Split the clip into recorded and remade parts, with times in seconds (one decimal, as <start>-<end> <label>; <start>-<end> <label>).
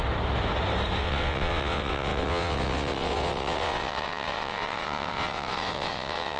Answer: 0.0-1.0 recorded; 1.0-6.4 remade